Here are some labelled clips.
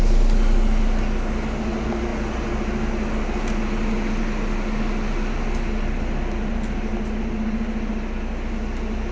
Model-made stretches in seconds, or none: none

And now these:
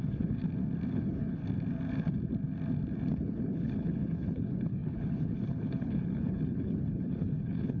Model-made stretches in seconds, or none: 0.0-0.4; 0.9-1.4; 3.2-7.8

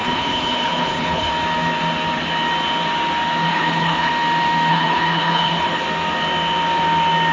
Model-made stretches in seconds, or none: 0.0-1.3; 3.5-4.1; 4.7-5.8

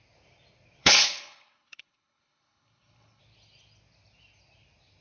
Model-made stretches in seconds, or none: 0.8-3.2

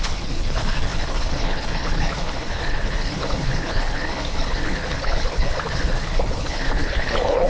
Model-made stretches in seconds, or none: 0.0-7.5